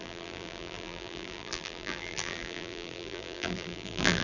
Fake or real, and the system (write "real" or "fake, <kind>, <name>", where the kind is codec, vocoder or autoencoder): fake, vocoder, BigVGAN v2